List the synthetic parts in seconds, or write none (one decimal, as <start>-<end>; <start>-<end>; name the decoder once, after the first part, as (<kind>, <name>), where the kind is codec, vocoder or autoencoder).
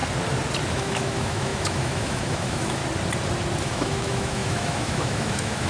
0.7-2.8 (autoencoder, DAC-VAE); 3.6-5.7